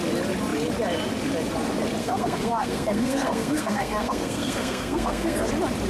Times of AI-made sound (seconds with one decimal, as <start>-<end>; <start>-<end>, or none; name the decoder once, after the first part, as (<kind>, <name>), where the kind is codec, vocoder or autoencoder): 2.0-5.5 (codec, SNAC)